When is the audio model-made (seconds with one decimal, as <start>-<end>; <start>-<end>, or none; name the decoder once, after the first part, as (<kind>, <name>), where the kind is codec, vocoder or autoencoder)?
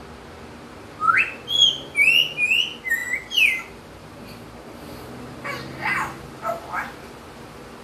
none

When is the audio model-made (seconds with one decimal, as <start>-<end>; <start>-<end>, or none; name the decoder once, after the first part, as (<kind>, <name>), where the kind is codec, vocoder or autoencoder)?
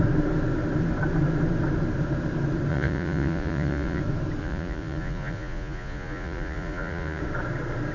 2.7-4.0 (vocoder, Vocos); 4.4-7.2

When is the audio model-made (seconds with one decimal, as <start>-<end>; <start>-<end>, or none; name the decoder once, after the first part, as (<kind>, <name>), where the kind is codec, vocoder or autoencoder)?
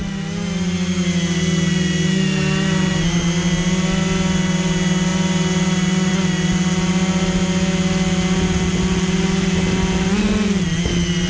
none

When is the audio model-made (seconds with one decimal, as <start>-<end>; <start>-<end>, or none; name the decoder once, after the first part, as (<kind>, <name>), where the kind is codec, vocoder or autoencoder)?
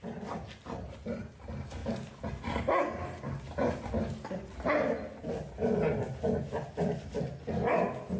none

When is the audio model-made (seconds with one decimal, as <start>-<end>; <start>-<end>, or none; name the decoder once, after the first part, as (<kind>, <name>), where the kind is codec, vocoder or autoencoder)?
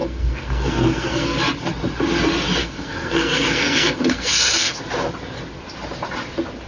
0.0-1.4 (codec, SNAC); 2.6-4.8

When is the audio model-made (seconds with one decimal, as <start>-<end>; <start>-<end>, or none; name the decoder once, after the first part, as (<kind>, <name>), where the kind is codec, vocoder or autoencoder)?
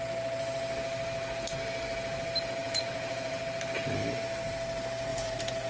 2.6-3.4 (vocoder, Vocos); 5.1-5.7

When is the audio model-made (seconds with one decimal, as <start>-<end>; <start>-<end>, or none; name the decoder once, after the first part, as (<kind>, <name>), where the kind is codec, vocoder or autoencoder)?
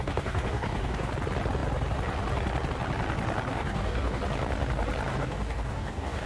0.0-1.1 (codec, DAC); 3.5-4.2; 5.1-6.3